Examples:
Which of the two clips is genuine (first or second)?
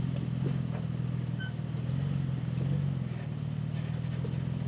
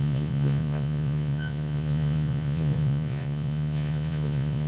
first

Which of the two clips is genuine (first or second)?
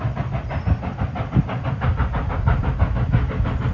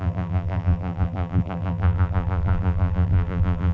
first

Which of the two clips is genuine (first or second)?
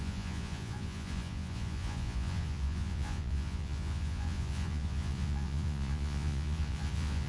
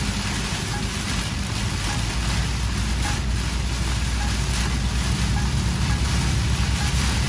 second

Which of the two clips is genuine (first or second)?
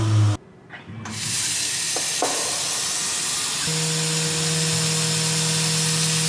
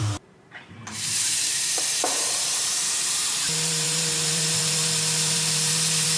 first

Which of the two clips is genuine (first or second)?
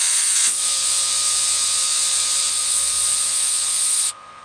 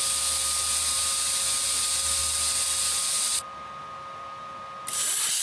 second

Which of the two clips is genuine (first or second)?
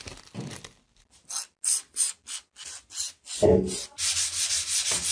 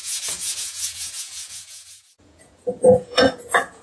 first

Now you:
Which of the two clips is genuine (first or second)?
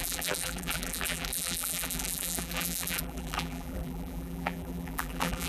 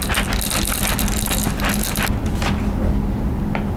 second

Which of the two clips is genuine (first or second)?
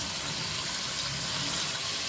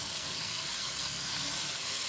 first